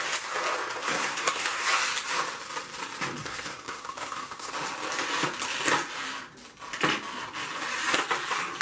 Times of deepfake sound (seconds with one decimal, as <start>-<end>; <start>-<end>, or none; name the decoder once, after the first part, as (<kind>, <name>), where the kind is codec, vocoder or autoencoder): 0.8-1.6 (codec, SNAC); 3.2-4.5